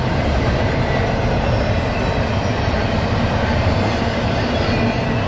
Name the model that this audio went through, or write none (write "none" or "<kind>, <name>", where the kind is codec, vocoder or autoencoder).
none